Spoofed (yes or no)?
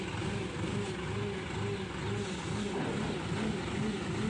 no